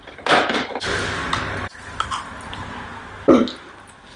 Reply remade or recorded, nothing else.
recorded